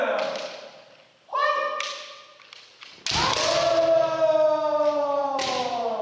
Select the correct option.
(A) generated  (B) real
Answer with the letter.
B